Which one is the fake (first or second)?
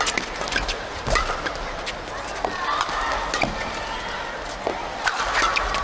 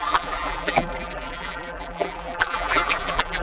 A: second